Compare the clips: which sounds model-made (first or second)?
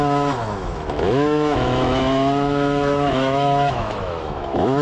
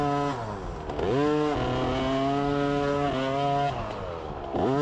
first